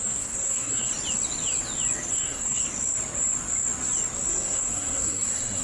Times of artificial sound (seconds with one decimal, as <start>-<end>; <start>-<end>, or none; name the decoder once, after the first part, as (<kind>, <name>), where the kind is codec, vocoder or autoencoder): 0.0-0.9 (codec, SNAC); 2.1-2.6; 4.3-5.6